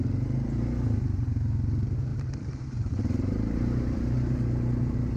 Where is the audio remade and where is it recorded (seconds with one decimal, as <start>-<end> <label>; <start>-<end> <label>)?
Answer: 0.0-2.1 recorded; 2.1-5.2 remade